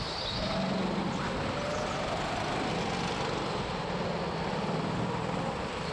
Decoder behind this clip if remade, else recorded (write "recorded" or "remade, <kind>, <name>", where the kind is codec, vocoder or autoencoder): recorded